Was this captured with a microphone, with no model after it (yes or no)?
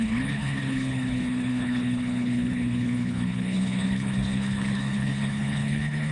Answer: no